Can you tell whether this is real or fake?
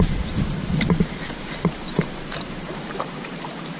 fake